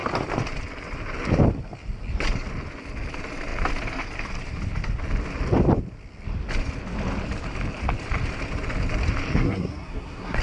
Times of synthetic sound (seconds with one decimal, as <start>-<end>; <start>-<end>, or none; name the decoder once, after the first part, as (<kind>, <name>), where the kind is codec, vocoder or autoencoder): 9.4-10.4 (codec, SNAC)